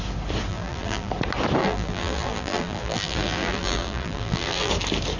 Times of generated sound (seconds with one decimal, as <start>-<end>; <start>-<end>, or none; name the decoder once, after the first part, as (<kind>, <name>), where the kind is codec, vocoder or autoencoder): 0.5-1.1 (vocoder, BigVGAN v2); 1.6-4.7